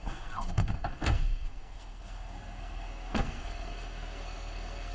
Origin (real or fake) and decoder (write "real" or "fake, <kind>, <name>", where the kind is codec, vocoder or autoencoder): fake, codec, SNAC